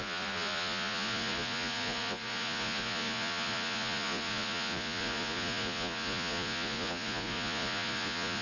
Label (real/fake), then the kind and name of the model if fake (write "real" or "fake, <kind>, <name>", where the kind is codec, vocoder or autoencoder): fake, vocoder, Vocos